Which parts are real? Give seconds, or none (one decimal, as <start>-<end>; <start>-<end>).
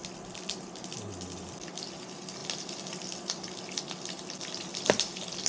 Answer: 0.6-5.5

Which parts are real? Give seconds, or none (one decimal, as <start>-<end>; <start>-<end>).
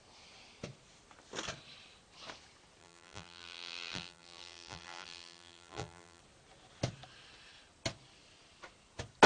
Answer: 0.0-2.8; 6.2-9.3